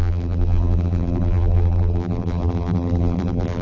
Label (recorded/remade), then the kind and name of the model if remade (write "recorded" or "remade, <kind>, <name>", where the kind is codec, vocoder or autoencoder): remade, vocoder, BigVGAN v2